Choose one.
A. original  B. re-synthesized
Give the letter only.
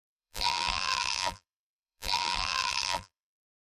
B